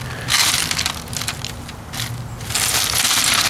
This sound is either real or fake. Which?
real